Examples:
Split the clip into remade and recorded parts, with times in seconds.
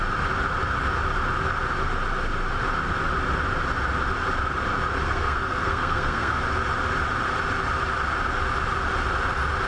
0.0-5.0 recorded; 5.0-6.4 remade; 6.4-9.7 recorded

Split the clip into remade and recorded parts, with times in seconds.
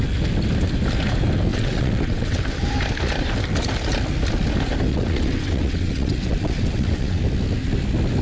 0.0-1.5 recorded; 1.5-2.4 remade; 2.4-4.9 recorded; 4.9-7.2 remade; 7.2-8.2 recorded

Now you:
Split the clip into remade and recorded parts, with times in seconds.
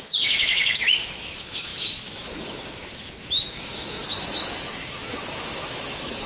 0.0-6.3 remade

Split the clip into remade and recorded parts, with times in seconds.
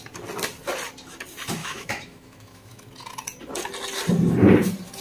0.0-1.6 recorded; 1.6-2.9 remade; 2.9-5.0 recorded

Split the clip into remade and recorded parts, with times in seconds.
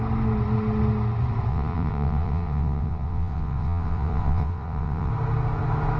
0.0-1.5 recorded; 1.5-5.1 remade; 5.1-6.0 recorded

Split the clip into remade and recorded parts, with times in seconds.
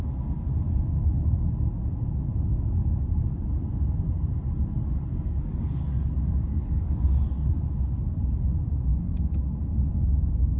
0.0-2.5 recorded; 2.5-3.2 remade; 3.2-5.1 recorded; 5.1-7.5 remade; 7.5-10.6 recorded